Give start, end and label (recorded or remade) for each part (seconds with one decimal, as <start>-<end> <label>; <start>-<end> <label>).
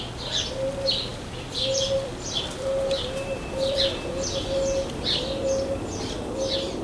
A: 0.0-1.1 recorded; 1.1-5.2 remade; 5.2-6.8 recorded